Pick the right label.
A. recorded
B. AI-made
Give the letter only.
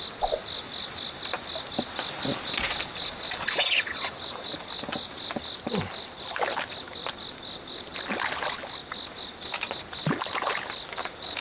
A